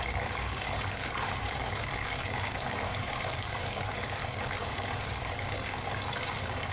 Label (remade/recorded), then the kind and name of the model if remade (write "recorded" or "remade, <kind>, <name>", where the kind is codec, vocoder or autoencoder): remade, codec, DAC